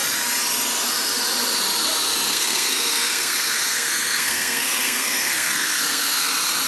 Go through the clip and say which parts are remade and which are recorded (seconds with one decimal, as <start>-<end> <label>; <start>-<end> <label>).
0.0-2.3 recorded; 2.3-6.3 remade; 6.3-6.7 recorded